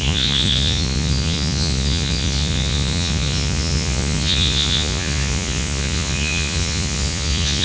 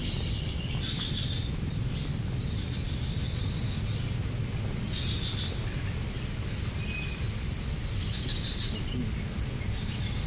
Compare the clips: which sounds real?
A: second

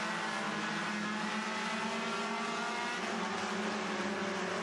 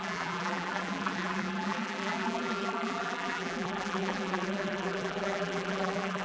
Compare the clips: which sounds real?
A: first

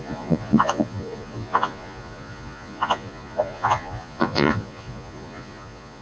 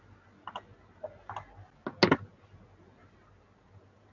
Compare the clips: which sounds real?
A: second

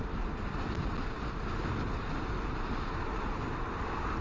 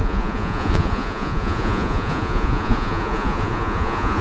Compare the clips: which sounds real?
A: first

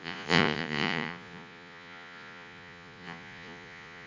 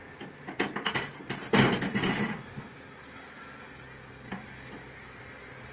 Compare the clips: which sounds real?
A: second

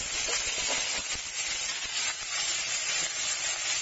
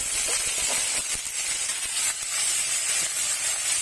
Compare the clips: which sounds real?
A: first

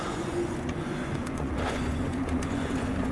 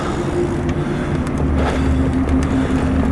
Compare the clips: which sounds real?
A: second